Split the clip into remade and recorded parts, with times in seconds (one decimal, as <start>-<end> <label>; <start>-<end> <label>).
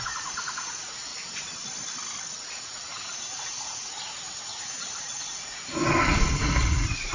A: 0.0-1.1 remade; 1.1-2.5 recorded; 2.5-5.8 remade; 5.8-6.3 recorded; 6.3-7.1 remade